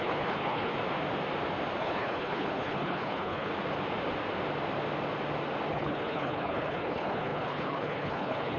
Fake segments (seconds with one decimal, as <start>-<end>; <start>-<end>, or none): 0.0-0.7; 1.8-3.5; 5.7-8.6